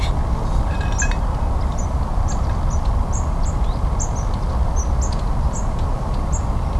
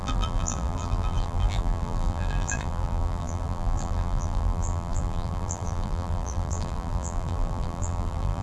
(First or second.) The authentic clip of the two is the first